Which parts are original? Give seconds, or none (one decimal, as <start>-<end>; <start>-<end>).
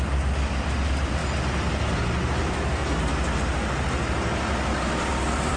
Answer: 1.2-2.4; 2.8-5.1